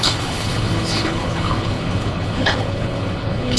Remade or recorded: remade